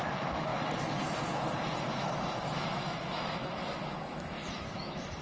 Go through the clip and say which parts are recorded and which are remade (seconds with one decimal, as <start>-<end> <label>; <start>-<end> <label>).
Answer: 0.0-0.5 remade; 0.5-1.9 recorded; 1.9-5.2 remade